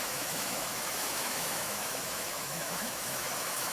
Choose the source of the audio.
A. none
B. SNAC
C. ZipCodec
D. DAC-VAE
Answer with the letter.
D